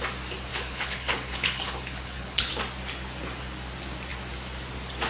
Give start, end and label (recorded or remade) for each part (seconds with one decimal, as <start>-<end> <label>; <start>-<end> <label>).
0.0-0.5 recorded; 0.5-2.5 remade; 2.5-5.1 recorded